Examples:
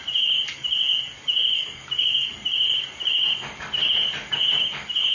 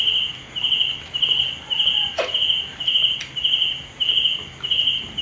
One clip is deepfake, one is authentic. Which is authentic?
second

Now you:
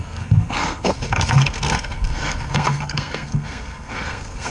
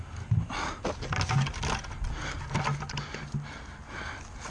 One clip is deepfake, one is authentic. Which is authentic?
second